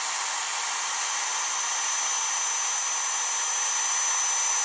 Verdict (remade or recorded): recorded